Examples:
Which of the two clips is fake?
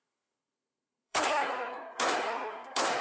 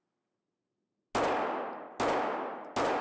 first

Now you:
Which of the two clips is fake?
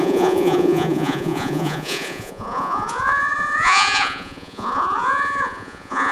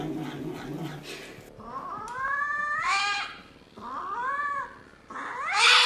first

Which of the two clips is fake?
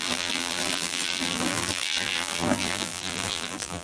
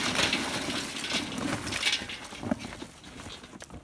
first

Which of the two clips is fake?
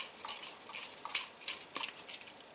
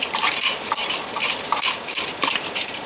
second